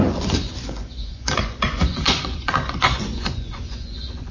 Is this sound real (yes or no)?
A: no